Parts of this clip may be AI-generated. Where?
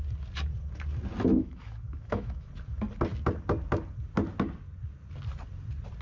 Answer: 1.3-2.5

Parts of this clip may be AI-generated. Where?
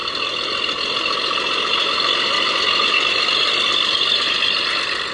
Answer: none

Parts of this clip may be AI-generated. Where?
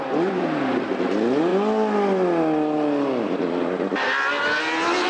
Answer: none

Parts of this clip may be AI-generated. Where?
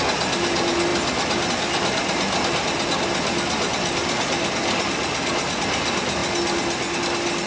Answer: none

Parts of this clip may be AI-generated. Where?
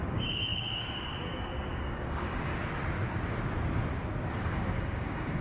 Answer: 0.0-2.5; 4.3-5.4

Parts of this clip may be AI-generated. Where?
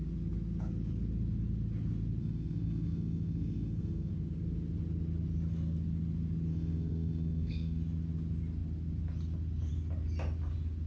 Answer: 2.2-4.1; 6.5-7.8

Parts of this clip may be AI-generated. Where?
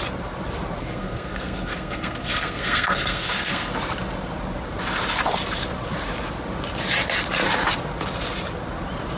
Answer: 0.8-3.7